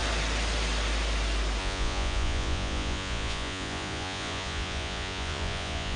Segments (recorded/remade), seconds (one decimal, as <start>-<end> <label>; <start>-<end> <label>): 0.0-1.6 recorded; 1.6-6.0 remade